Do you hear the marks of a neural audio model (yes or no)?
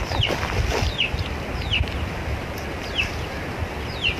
no